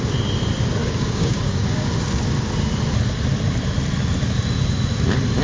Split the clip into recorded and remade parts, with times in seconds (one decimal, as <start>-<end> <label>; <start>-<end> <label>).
0.0-0.8 recorded; 0.8-1.9 remade; 1.9-5.4 recorded